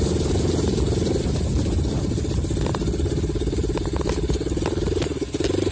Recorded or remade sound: recorded